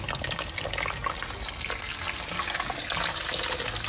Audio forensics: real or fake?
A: real